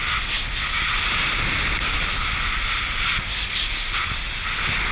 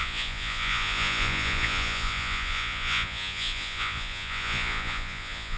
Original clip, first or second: first